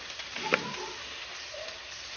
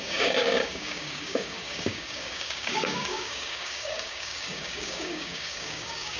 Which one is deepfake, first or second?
second